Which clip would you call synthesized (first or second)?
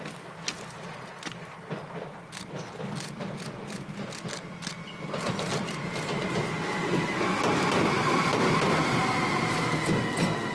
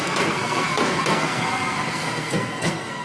second